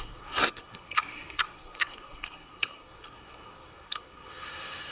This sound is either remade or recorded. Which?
remade